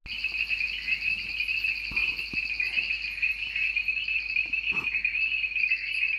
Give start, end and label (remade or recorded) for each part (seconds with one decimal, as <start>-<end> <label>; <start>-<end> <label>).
0.0-6.2 recorded